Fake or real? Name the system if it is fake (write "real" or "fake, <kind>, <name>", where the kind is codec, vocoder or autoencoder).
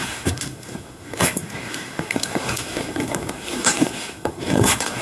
fake, codec, SNAC